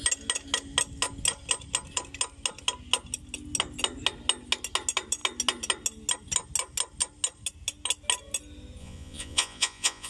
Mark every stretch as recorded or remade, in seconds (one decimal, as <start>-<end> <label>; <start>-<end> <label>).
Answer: 0.0-8.8 recorded; 8.8-10.1 remade